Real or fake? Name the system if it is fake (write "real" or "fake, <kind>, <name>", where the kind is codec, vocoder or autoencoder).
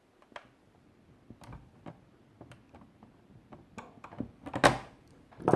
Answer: real